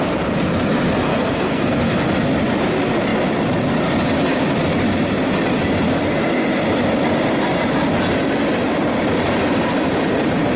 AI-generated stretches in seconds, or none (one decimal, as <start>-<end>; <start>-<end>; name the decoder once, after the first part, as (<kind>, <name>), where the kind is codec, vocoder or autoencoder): 1.1-1.8 (codec, SNAC)